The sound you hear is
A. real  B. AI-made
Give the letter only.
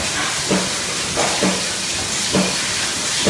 A